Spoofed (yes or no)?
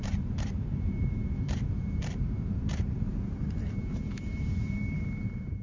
yes